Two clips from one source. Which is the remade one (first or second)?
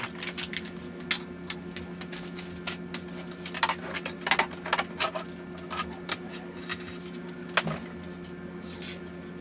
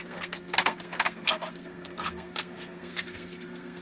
second